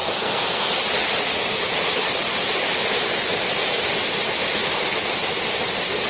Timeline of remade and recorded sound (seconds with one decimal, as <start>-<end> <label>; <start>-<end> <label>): 0.0-0.7 remade; 0.7-6.1 recorded